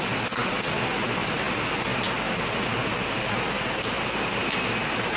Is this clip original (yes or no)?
yes